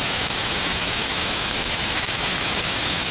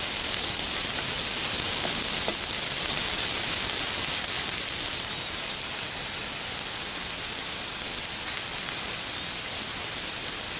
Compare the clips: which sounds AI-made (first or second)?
first